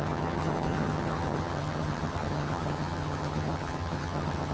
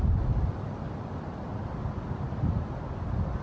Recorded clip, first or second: second